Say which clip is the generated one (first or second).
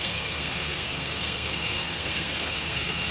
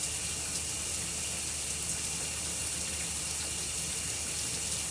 first